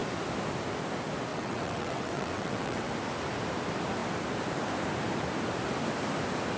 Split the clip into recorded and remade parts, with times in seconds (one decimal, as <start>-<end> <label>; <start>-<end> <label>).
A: 0.0-1.3 recorded; 1.3-2.9 remade; 2.9-6.6 recorded